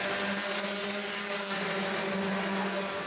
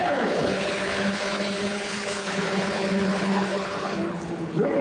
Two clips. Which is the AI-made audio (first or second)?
second